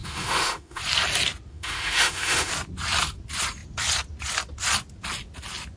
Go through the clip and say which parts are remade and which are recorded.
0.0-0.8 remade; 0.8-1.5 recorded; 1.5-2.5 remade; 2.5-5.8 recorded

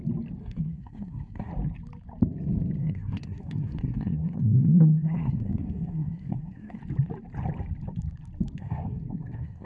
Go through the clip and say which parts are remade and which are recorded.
0.0-0.4 recorded; 0.4-1.5 remade; 1.5-2.8 recorded; 2.8-6.8 remade; 6.8-8.6 recorded; 8.6-9.7 remade

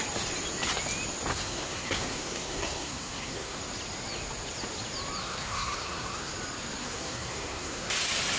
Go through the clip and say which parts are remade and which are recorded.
0.0-1.3 recorded; 1.3-3.6 remade; 3.6-5.2 recorded; 5.2-6.3 remade; 6.3-6.8 recorded; 6.8-7.9 remade; 7.9-8.4 recorded

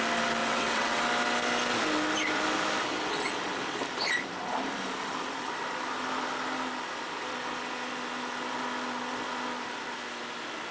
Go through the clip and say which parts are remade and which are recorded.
0.0-0.4 recorded; 0.4-1.0 remade; 1.0-10.7 recorded

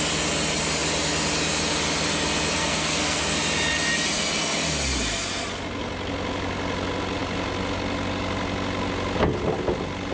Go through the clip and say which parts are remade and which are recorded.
0.0-2.6 recorded; 2.6-3.2 remade; 3.2-10.1 recorded

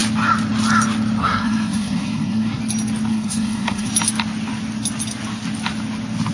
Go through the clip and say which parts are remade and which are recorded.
0.0-1.2 recorded; 1.2-2.6 remade; 2.6-3.1 recorded; 3.1-3.9 remade; 3.9-6.3 recorded